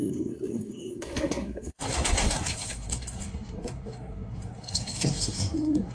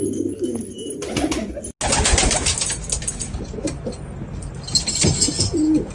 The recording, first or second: second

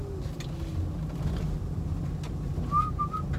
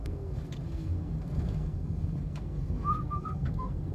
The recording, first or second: first